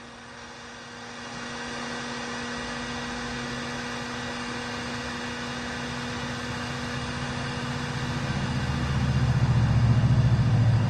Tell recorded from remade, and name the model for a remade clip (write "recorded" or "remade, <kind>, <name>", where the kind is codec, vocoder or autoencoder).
recorded